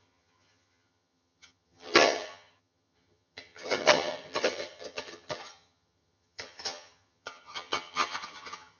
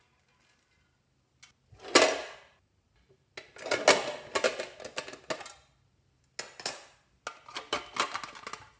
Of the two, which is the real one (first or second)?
second